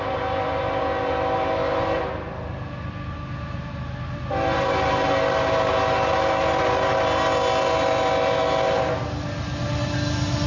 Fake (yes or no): no